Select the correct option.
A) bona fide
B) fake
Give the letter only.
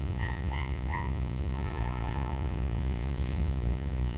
B